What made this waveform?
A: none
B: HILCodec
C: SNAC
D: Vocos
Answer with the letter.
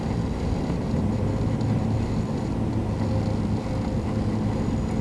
A